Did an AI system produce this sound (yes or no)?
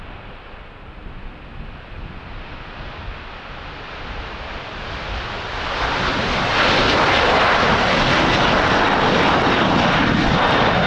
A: no